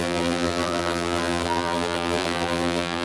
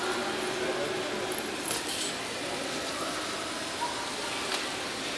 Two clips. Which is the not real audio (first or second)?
first